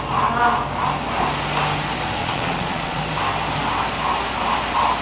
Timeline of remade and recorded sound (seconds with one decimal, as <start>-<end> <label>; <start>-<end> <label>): 0.0-2.2 recorded; 2.2-3.0 remade; 3.0-5.0 recorded